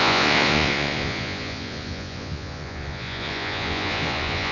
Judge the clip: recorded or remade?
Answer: remade